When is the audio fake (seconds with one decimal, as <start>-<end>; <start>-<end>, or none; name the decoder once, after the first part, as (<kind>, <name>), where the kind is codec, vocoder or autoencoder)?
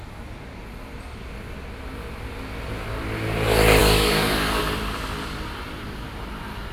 3.8-4.6 (codec, DAC)